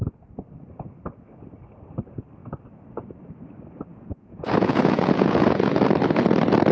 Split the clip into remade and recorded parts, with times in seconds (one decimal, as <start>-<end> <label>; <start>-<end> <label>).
0.0-3.9 recorded; 3.9-5.8 remade; 5.8-6.7 recorded